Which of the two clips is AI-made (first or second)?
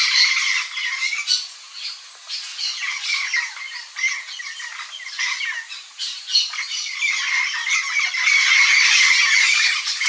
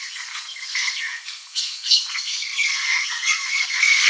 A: second